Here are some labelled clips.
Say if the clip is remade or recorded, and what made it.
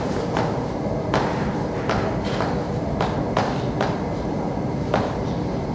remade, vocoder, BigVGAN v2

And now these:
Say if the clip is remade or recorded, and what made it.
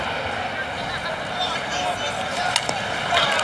recorded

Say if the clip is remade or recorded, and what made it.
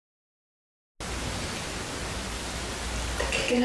recorded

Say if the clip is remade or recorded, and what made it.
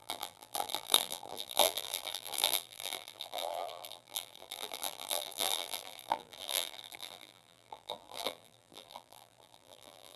remade, vocoder, BigVGAN v2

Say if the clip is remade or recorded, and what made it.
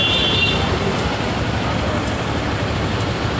recorded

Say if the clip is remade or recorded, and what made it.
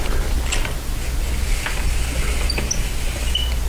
recorded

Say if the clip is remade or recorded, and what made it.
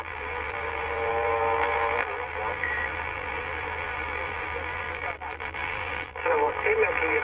remade, vocoder, BigVGAN v2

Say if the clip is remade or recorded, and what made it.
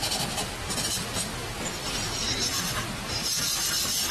recorded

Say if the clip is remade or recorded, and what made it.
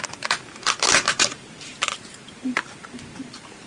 remade, vocoder, BigVGAN v2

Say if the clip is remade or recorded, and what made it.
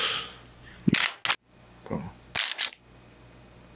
recorded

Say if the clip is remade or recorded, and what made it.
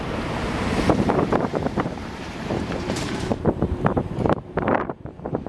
remade, vocoder, BigVGAN v2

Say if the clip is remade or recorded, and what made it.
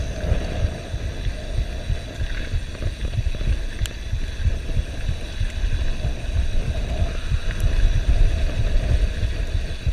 recorded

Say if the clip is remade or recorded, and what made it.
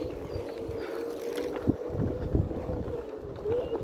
recorded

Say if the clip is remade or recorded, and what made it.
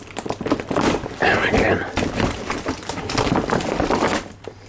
remade, vocoder, BigVGAN v2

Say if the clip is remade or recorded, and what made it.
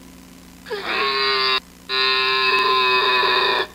recorded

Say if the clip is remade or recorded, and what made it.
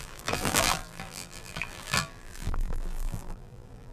remade, vocoder, BigVGAN v2